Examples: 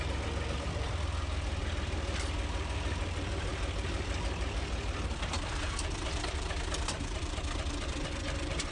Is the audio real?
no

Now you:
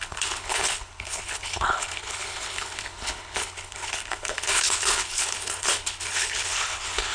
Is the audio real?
no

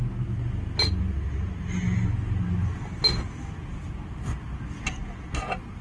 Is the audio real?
yes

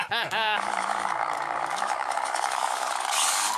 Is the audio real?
no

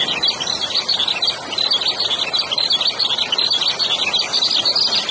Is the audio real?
yes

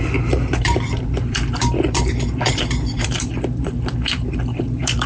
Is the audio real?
no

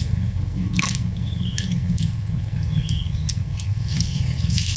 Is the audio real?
no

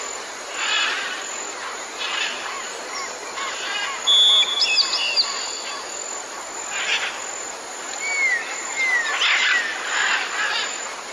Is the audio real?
yes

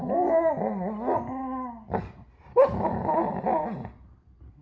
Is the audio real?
yes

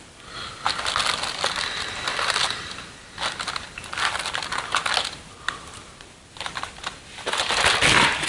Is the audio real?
yes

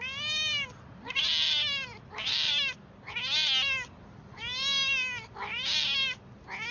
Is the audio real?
yes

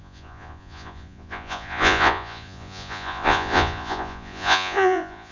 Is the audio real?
no